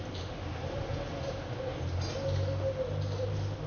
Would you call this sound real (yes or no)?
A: yes